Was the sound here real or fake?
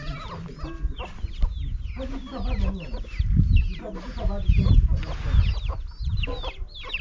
real